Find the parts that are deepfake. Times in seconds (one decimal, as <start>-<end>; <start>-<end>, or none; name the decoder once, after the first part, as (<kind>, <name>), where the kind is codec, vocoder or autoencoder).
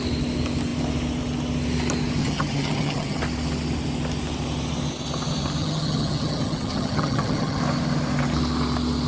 2.2-3.2 (vocoder, HiFi-GAN); 5.6-7.6